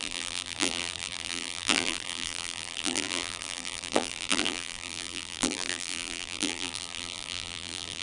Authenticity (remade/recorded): remade